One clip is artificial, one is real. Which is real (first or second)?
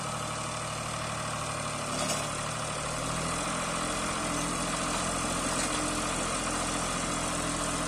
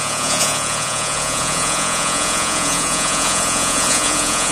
first